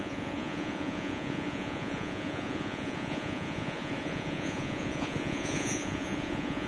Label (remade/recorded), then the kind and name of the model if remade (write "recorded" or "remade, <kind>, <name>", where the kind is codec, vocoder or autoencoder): remade, vocoder, Vocos